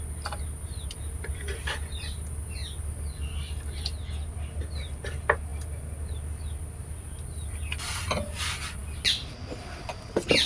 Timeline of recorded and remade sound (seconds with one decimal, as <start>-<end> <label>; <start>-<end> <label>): 0.0-10.5 recorded